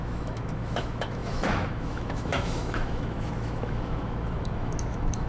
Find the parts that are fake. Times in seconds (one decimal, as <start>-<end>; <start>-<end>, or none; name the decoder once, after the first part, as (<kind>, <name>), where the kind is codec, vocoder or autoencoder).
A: 0.0-5.3 (autoencoder, DAC-VAE)